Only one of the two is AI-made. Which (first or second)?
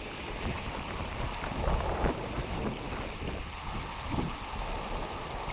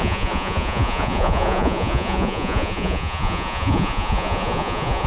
second